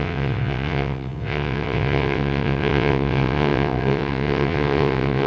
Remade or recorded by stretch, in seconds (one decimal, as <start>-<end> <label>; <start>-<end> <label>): 0.0-5.3 remade